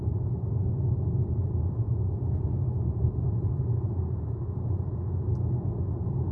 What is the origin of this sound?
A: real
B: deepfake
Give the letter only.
A